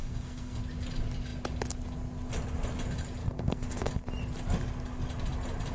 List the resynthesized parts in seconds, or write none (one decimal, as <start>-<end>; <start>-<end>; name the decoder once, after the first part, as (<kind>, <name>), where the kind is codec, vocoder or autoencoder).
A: 0.0-0.6 (codec, SNAC); 3.2-3.9